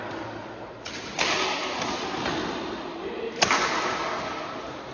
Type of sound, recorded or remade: recorded